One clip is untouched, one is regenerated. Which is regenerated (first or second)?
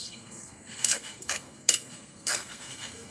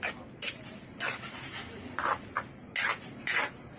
first